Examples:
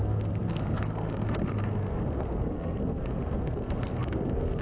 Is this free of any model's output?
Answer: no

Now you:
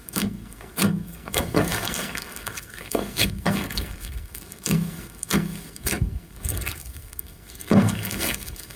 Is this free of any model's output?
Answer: no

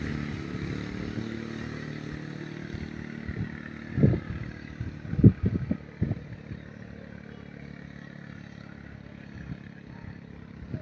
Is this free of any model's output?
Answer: yes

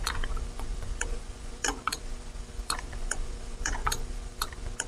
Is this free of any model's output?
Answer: no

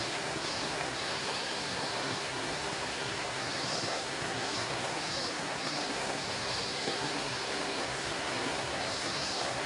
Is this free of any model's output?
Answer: no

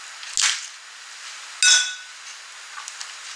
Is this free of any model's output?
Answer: yes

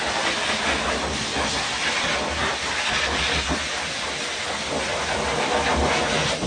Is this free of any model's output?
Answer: yes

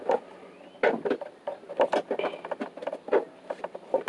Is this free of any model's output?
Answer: yes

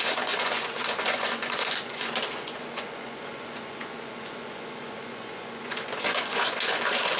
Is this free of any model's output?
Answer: no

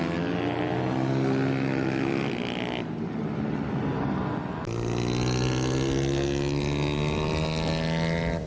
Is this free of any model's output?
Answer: yes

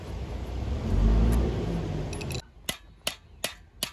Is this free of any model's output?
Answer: yes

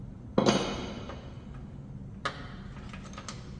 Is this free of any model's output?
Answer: yes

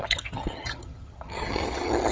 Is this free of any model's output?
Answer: no